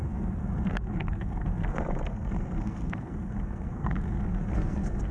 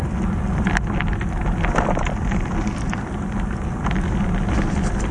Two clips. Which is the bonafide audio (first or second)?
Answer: second